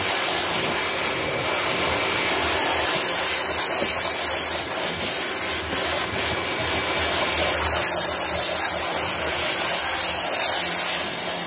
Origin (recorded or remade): recorded